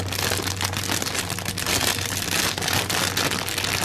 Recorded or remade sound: recorded